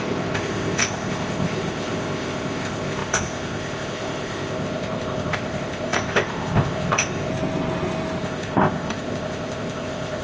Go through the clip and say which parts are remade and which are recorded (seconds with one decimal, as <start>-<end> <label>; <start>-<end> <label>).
0.0-7.3 remade; 7.3-8.2 recorded; 8.2-10.2 remade